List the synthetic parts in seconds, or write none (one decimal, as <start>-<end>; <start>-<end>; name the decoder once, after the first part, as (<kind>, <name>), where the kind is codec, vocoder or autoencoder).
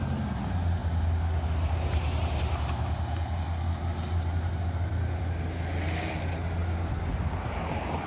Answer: none